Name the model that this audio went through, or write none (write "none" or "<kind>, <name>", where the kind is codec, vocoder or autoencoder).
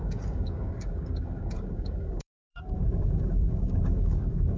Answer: codec, DAC